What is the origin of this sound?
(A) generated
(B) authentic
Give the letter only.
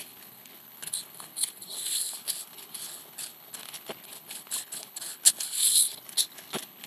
A